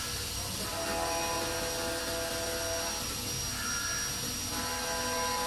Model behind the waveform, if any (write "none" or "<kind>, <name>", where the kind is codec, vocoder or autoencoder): none